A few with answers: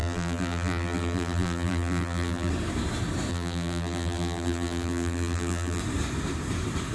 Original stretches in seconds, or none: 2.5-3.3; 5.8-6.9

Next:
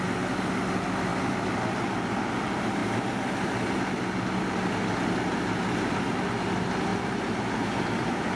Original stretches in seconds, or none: 0.0-6.9

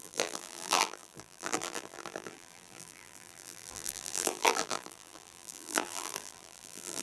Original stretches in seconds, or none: none

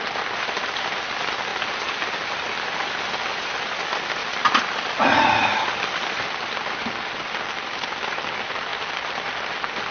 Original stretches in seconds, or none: 1.5-2.3

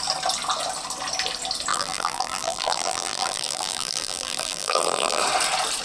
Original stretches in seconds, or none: 0.0-1.7; 5.2-5.8

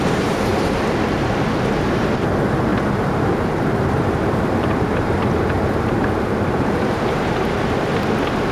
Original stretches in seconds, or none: 0.5-1.7

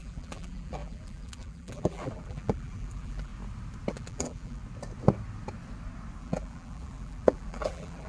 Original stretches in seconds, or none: 3.3-3.9; 4.6-6.2